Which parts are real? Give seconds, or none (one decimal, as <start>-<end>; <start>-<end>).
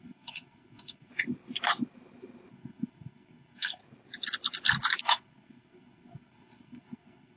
1.1-2.5; 3.8-5.0